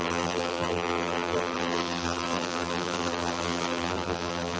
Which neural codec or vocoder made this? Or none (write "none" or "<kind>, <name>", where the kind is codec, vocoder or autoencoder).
vocoder, BigVGAN v2